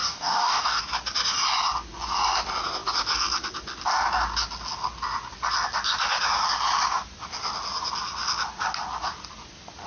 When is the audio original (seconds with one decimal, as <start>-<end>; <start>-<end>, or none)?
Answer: 0.8-9.9

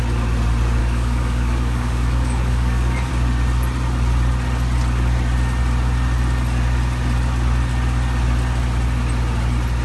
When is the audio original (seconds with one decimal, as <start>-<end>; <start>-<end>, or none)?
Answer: 0.0-0.8; 3.1-9.8

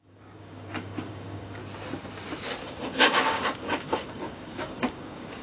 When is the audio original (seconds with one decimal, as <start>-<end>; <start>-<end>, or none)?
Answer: 1.6-2.6

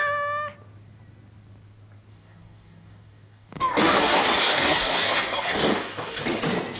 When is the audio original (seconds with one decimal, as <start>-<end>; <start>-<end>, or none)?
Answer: 0.0-2.1; 6.2-6.8

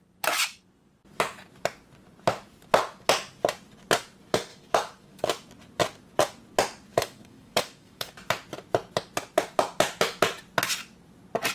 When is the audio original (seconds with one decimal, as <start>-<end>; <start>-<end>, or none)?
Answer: 0.0-4.5; 5.3-6.9; 8.1-11.5

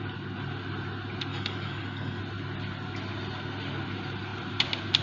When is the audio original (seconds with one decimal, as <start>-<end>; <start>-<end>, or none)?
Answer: 0.0-1.3; 2.2-5.0

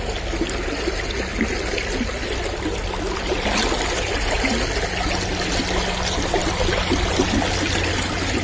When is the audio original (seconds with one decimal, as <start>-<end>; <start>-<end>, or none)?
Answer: 0.0-8.4